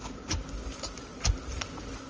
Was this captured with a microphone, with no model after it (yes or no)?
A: yes